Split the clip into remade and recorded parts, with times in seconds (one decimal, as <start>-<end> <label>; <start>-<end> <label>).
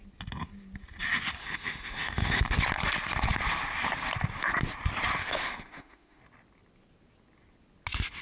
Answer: 0.0-1.4 recorded; 1.4-2.4 remade; 2.4-5.2 recorded; 5.2-6.2 remade; 6.2-8.2 recorded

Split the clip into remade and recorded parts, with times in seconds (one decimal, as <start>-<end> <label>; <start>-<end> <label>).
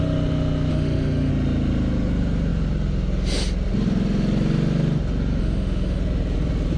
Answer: 0.0-0.7 recorded; 0.7-1.3 remade; 1.3-5.4 recorded; 5.4-6.0 remade; 6.0-6.8 recorded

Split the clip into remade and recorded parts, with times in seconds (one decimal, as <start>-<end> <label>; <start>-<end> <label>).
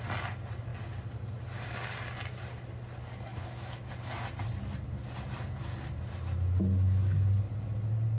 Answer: 0.0-3.3 recorded; 3.3-3.9 remade; 3.9-8.2 recorded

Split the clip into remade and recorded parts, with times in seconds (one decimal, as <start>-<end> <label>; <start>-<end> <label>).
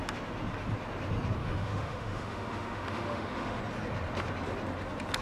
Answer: 0.0-1.4 recorded; 1.4-3.6 remade; 3.6-5.2 recorded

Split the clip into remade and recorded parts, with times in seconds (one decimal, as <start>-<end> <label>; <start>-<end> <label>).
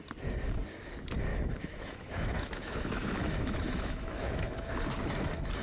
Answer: 0.0-1.3 recorded; 1.3-4.7 remade; 4.7-5.6 recorded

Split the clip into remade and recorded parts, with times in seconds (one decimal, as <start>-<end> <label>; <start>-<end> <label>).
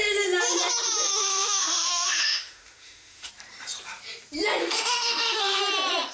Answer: 0.0-1.1 recorded; 1.1-3.3 remade; 3.3-4.6 recorded; 4.6-5.6 remade; 5.6-6.1 recorded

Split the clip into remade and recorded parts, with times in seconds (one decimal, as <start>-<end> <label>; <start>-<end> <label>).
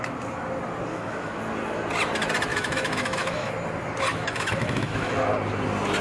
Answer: 0.0-0.9 recorded; 0.9-1.4 remade; 1.4-2.5 recorded; 2.5-3.5 remade; 3.5-4.1 recorded; 4.1-5.1 remade; 5.1-6.0 recorded